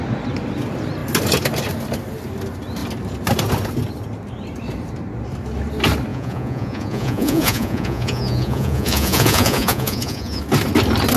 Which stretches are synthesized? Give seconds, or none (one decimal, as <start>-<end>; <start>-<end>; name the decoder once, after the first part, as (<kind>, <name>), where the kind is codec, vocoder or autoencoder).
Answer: 6.1-10.4 (vocoder, Vocos)